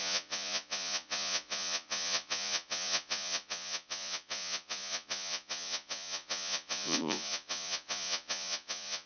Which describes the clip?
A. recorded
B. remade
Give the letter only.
B